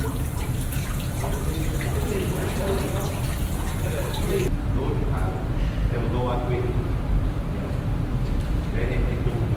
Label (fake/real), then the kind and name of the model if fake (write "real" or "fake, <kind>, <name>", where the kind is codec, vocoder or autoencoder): fake, vocoder, BigVGAN v2